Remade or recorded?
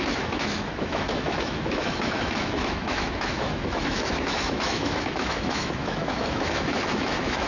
remade